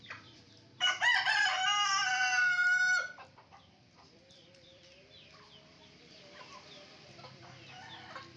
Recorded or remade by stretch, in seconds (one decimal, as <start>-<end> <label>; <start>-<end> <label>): 0.0-1.5 remade; 1.5-2.1 recorded; 2.1-8.4 remade